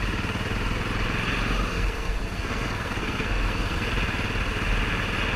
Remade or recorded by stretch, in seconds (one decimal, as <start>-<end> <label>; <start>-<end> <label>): 0.0-1.7 recorded; 1.7-3.9 remade; 3.9-5.4 recorded